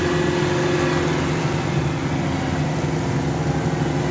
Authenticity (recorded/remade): recorded